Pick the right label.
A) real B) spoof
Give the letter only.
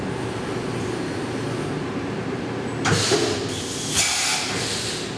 A